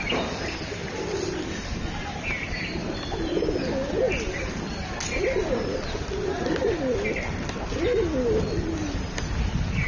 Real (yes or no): yes